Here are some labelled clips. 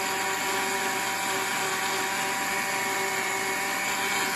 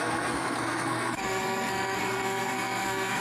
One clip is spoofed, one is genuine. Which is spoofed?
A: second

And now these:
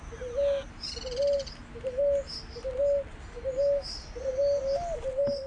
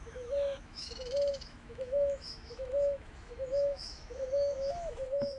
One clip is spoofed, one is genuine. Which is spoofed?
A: second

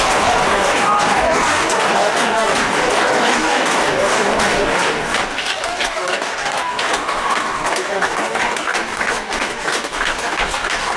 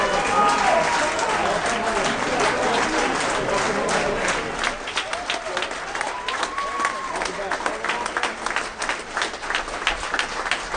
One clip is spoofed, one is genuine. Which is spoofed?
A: first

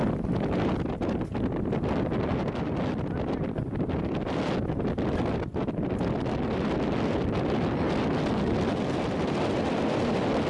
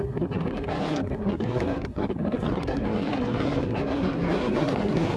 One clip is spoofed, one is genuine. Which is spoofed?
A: second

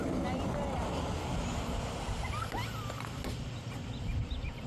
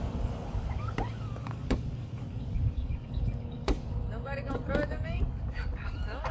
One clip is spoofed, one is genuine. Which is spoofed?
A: second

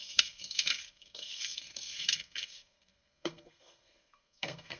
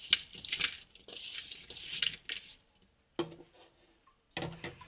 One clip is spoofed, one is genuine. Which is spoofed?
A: first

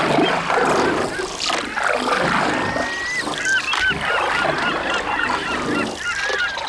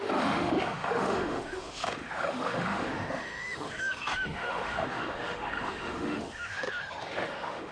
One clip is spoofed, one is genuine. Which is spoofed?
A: second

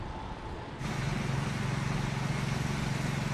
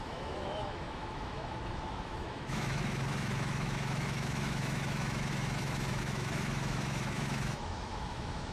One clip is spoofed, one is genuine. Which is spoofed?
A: second